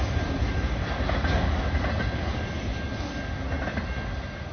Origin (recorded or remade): recorded